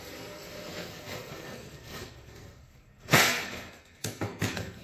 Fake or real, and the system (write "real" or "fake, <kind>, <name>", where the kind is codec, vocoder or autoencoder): fake, codec, SNAC